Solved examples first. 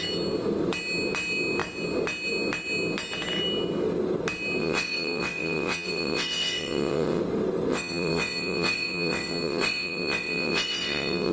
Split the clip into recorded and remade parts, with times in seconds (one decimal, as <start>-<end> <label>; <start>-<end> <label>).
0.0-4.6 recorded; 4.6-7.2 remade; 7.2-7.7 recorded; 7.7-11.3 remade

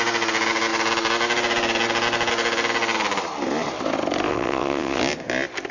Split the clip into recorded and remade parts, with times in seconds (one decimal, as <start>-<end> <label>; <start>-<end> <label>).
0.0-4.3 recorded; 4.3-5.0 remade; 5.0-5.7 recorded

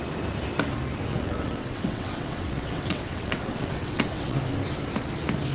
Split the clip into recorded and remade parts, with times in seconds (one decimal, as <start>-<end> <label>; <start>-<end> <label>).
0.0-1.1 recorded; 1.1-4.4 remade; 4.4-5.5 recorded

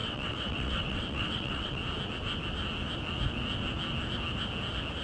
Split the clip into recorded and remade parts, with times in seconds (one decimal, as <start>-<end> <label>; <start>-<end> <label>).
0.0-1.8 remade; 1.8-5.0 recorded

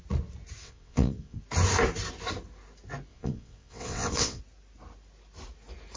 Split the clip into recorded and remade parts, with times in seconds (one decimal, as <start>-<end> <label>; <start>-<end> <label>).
0.0-0.6 recorded; 0.6-1.4 remade; 1.4-3.1 recorded; 3.1-4.4 remade; 4.4-6.0 recorded

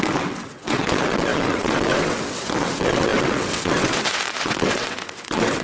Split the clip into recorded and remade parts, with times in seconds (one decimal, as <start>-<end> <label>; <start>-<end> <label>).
0.0-5.6 remade

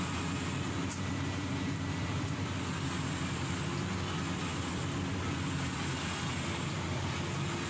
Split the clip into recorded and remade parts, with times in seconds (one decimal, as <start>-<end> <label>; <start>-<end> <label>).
0.0-7.7 recorded